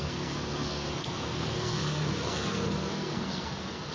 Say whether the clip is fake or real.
fake